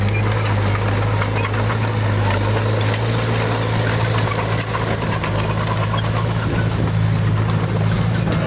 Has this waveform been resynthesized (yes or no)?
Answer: no